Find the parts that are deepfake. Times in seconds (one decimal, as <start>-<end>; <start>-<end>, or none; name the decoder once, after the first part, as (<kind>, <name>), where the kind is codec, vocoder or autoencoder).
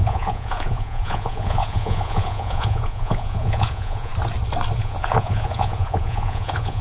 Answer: 0.0-4.1 (vocoder, Vocos); 4.8-6.8